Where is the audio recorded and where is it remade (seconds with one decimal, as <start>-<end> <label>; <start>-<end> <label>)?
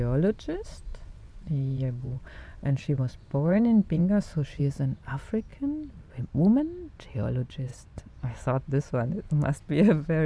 0.0-0.9 recorded; 0.9-4.6 remade; 4.6-7.7 recorded; 7.7-9.1 remade; 9.1-10.3 recorded